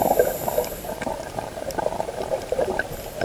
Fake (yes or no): yes